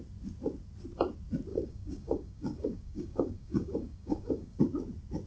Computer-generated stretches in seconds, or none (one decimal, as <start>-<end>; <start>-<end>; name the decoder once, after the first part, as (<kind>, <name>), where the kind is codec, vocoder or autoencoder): 1.5-4.6 (codec, DAC)